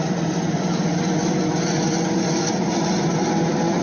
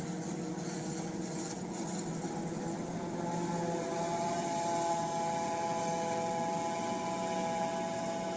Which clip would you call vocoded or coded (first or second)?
first